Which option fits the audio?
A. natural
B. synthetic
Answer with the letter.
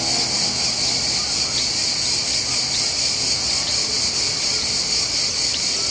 A